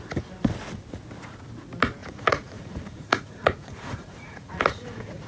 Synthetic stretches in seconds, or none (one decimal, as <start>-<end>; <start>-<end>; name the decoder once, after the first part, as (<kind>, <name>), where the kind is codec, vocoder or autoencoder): 2.0-5.3 (vocoder, Vocos)